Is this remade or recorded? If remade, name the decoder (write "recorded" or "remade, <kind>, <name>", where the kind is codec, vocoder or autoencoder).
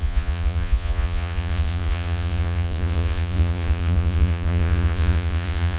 remade, vocoder, Vocos